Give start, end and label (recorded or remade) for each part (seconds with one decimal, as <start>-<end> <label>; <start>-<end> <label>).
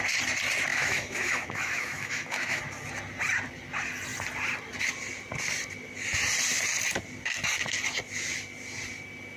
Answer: 0.0-0.7 recorded; 0.7-2.6 remade; 2.6-9.4 recorded